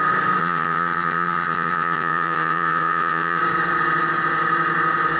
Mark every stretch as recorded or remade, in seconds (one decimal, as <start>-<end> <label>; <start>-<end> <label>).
0.0-0.4 recorded; 0.4-3.4 remade; 3.4-5.2 recorded